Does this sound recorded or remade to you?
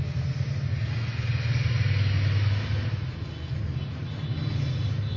recorded